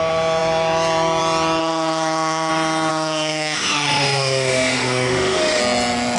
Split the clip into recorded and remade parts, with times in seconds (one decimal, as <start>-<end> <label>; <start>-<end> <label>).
0.0-1.6 recorded; 1.6-2.5 remade; 2.5-2.9 recorded; 2.9-5.6 remade; 5.6-6.2 recorded